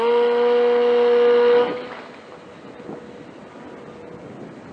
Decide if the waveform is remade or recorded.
recorded